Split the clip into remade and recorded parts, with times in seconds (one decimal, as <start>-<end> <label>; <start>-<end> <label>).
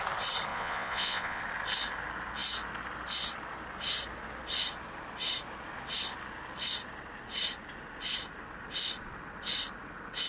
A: 0.0-0.5 recorded; 0.5-1.4 remade; 1.4-10.3 recorded